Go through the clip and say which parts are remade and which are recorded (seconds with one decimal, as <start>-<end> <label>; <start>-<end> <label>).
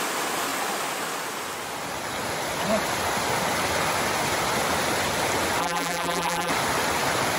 0.0-5.6 recorded; 5.6-6.5 remade; 6.5-7.4 recorded